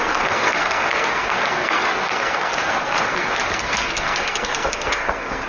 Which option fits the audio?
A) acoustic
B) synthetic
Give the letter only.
B